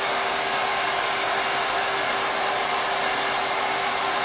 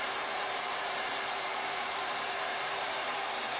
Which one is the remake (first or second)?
second